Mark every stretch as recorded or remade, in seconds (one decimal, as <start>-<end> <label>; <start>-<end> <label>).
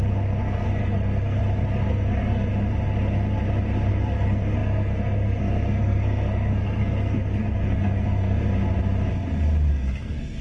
0.0-1.4 remade; 1.4-1.9 recorded; 1.9-2.5 remade; 2.5-3.9 recorded; 3.9-8.4 remade; 8.4-9.7 recorded; 9.7-10.4 remade